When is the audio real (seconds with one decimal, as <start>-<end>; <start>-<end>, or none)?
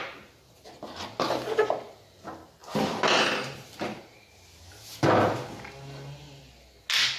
0.0-2.6; 4.0-7.2